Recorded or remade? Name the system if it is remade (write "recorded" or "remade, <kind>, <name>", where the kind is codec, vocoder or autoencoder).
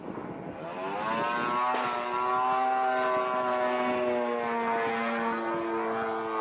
recorded